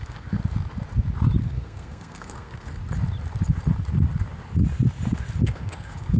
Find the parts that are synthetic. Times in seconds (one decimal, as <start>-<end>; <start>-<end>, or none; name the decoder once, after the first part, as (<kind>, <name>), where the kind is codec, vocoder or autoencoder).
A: 0.0-0.4 (codec, SNAC); 1.4-2.8; 5.4-6.2

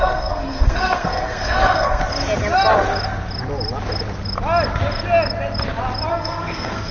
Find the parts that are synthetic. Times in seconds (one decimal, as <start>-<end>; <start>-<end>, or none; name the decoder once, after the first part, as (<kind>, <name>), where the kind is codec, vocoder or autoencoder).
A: 0.0-2.0 (codec, SNAC); 6.1-6.9

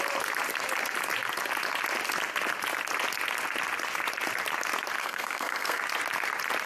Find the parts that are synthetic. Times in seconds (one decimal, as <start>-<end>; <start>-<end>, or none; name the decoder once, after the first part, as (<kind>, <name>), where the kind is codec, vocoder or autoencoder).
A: 5.0-5.8 (codec, SNAC)

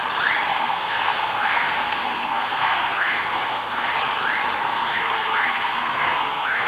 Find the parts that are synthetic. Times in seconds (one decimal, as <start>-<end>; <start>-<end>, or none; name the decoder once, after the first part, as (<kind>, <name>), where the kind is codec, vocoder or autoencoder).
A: 0.5-3.9 (codec, SNAC); 4.6-6.7

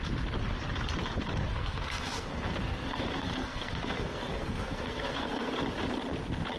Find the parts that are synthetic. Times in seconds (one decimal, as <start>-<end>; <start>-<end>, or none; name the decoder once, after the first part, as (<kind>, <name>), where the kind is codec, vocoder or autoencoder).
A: 1.5-5.5 (codec, SNAC)

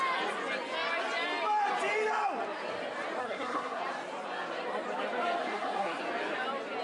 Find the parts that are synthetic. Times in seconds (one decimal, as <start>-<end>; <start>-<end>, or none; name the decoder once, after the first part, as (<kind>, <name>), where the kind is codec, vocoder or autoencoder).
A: 3.2-3.8 (codec, SNAC); 5.4-6.0